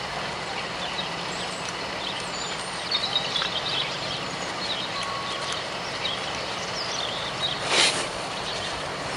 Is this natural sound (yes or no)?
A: no